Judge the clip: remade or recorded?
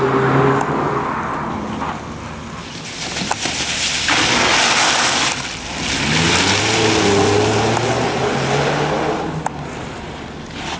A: recorded